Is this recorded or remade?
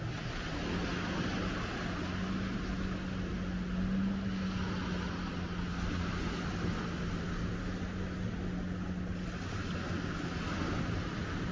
recorded